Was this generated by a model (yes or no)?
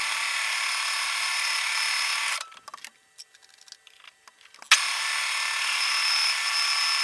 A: no